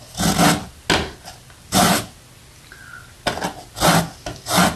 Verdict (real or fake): real